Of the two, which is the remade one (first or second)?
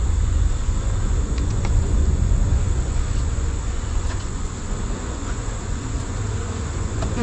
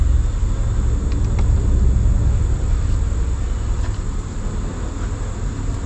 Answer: first